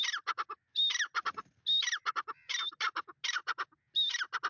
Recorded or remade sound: recorded